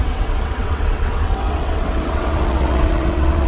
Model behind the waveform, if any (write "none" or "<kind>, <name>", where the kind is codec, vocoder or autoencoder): vocoder, WaveNeXt